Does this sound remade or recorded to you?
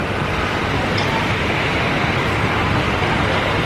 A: recorded